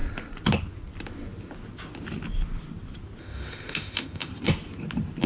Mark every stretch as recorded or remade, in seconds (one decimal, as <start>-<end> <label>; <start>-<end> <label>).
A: 0.0-3.2 recorded; 3.2-4.3 remade; 4.3-5.3 recorded